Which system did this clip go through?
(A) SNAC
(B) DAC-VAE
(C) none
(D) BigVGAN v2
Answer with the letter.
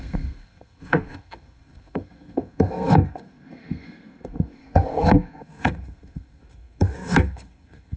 A